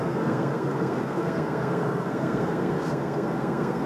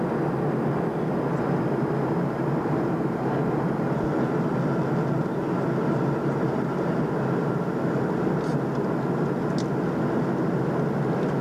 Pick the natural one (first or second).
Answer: second